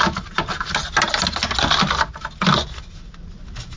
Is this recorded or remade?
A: recorded